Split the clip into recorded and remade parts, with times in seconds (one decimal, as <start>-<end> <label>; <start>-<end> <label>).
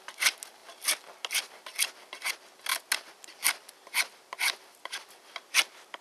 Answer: 0.0-6.0 recorded